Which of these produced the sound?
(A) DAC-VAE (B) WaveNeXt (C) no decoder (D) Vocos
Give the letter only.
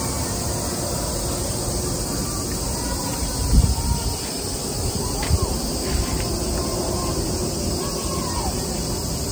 C